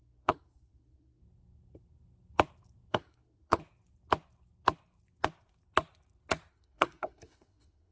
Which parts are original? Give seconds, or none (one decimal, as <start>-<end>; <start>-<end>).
1.2-2.9; 3.6-6.5